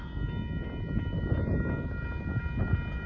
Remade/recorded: recorded